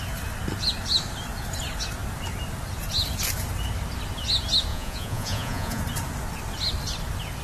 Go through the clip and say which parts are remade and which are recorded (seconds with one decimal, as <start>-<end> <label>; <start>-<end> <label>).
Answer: 0.0-4.7 recorded; 4.7-5.8 remade; 5.8-7.4 recorded